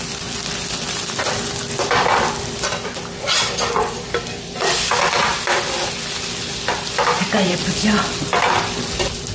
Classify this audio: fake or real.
real